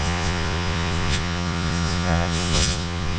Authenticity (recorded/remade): remade